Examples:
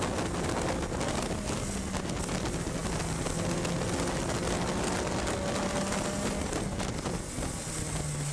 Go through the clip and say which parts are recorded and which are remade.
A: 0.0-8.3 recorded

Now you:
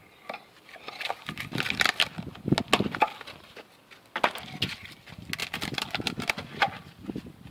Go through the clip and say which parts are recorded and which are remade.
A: 0.0-7.5 recorded

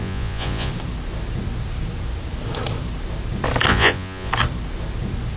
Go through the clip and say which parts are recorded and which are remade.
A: 0.0-0.7 remade; 0.7-3.7 recorded; 3.7-4.3 remade; 4.3-5.4 recorded

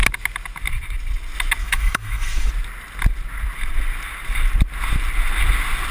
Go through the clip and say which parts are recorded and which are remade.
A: 0.0-1.6 recorded; 1.6-2.5 remade; 2.5-5.9 recorded

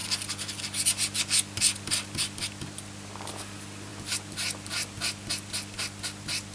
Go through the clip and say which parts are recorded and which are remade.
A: 0.0-6.5 recorded